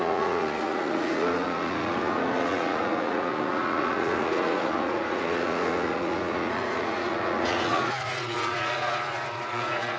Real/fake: fake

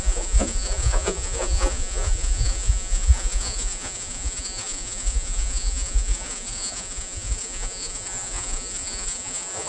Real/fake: fake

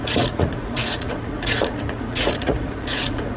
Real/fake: fake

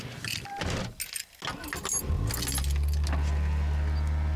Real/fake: real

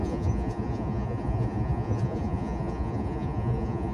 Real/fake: fake